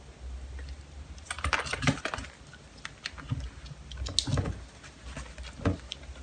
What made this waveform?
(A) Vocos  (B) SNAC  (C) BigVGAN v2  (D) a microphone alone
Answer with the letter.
D